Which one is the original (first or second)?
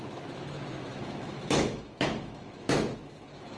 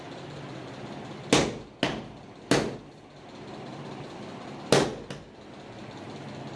second